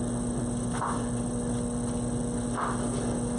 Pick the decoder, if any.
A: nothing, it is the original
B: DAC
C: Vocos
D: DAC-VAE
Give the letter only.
A